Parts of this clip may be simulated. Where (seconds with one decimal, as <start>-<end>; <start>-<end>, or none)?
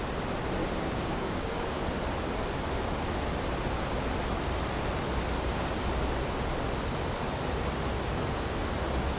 0.6-1.8